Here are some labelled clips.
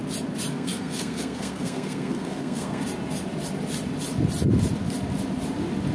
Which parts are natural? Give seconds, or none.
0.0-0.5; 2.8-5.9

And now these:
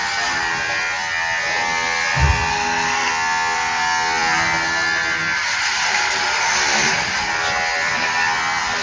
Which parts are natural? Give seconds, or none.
0.0-2.5; 3.1-8.8

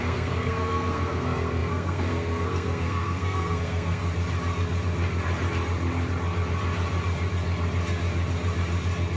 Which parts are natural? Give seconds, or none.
4.0-9.2

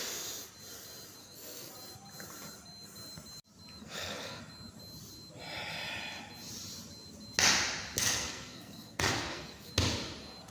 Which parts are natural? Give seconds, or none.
0.0-1.2; 1.7-3.8; 4.4-8.0; 9.7-10.5

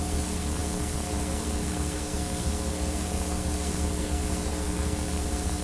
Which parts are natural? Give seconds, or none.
none